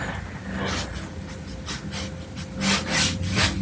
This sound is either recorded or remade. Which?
recorded